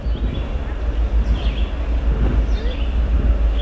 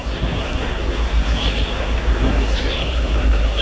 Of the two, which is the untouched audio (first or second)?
first